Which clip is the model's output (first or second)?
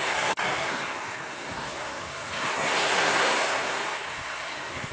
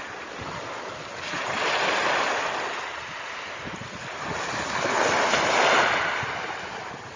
first